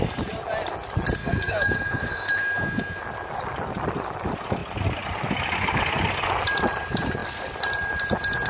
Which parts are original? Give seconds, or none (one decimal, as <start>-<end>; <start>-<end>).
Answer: 0.0-1.2; 3.0-8.5